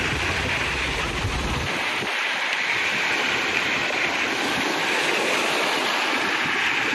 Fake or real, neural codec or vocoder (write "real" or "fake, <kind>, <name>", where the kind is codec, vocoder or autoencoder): real